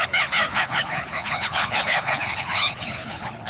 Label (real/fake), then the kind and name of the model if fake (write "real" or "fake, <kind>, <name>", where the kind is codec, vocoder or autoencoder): fake, codec, HILCodec